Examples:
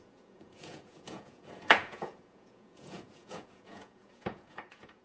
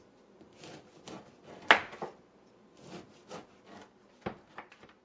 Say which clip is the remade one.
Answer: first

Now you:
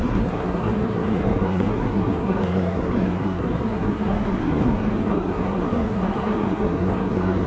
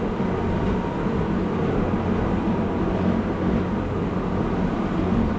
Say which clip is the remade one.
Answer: first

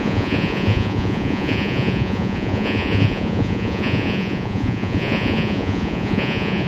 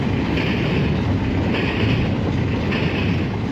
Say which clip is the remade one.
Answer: first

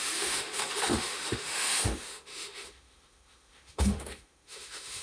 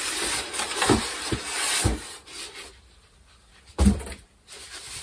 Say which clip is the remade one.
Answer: first